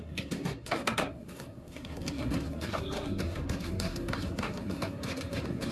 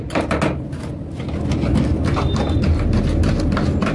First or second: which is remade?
first